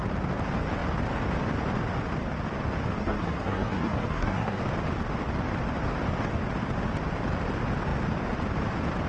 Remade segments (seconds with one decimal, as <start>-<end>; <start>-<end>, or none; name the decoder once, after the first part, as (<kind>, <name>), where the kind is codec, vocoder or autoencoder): 3.0-4.6 (codec, SNAC)